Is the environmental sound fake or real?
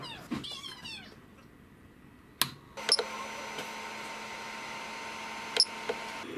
real